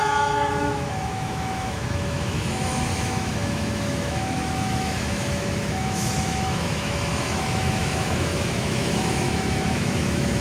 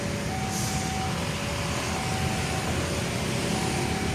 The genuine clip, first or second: second